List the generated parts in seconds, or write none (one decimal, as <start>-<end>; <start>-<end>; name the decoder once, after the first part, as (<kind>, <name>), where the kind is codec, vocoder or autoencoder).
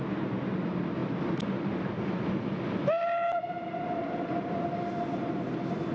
none